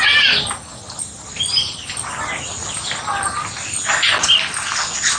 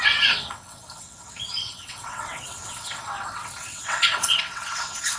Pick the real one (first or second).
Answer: first